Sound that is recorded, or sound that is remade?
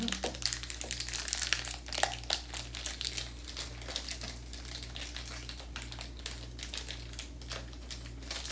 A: recorded